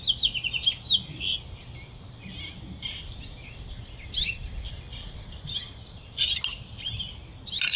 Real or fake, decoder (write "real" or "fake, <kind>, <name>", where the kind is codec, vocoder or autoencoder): real